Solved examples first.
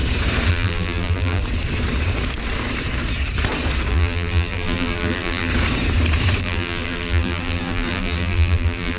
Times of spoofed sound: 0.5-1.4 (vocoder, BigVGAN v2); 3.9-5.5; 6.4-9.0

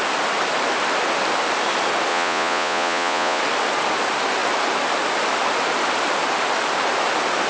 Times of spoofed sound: 2.1-3.4 (vocoder, Vocos)